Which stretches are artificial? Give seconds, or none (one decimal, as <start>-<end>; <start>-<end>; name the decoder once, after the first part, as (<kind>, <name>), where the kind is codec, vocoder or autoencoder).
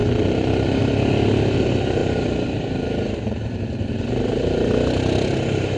0.0-0.8 (vocoder, BigVGAN v2); 2.0-4.5